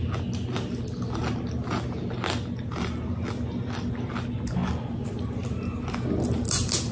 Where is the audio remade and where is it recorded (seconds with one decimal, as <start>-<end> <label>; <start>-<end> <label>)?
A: 0.0-4.6 recorded; 4.6-5.6 remade; 5.6-6.9 recorded